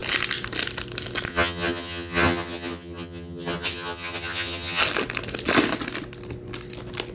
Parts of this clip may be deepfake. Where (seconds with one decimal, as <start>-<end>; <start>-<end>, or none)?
1.3-4.8